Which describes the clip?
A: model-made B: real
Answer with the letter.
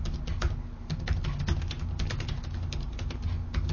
B